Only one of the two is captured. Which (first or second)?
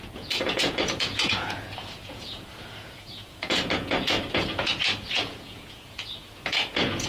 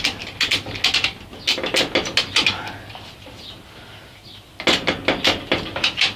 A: second